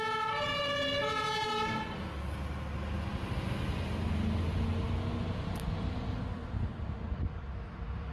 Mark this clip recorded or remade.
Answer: recorded